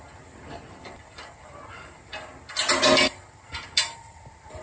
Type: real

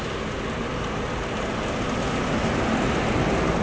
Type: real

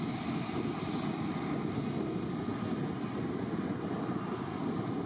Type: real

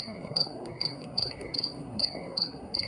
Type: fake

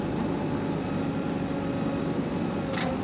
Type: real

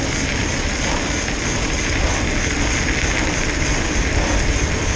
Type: real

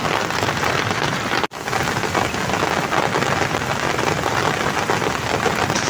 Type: real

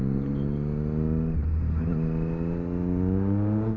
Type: real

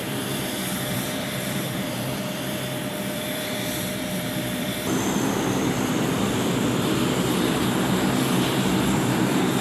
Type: fake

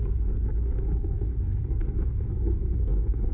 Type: fake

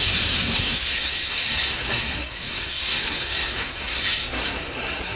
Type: fake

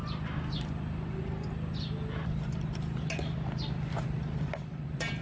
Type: real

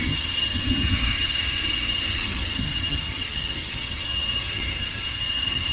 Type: fake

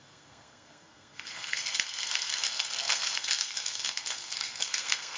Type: fake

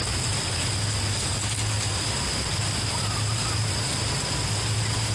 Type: real